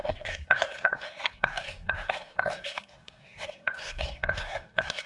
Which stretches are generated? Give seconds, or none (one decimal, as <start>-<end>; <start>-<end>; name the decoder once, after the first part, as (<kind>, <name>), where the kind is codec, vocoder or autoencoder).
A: 0.0-5.1 (codec, SNAC)